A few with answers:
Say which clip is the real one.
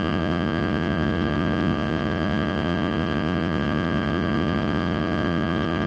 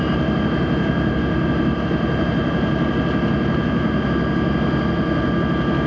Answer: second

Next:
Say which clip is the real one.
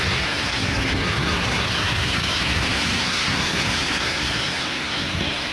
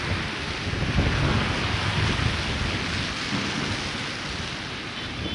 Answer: second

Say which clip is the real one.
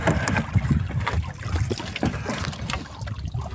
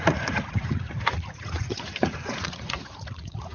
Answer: first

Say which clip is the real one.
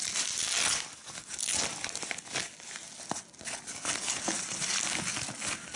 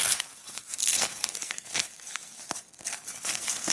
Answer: first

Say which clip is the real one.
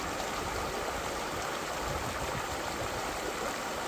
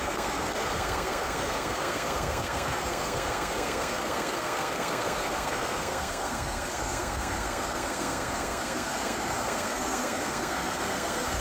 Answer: first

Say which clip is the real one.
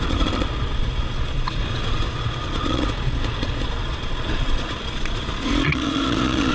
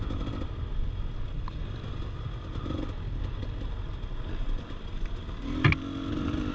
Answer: second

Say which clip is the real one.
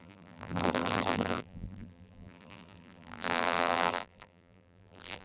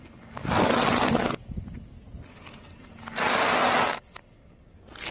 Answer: second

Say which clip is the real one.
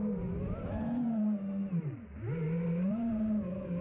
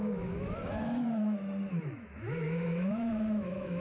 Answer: first